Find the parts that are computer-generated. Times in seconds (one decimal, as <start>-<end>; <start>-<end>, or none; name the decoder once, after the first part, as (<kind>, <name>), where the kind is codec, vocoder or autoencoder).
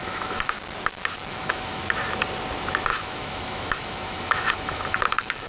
0.0-0.6 (autoencoder, DAC-VAE); 1.2-1.8; 2.9-5.5